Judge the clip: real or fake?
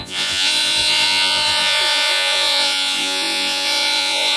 fake